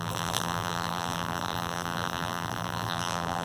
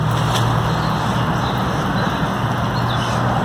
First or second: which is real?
second